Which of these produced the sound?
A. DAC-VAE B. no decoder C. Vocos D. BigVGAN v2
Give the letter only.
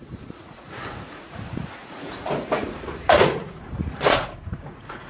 C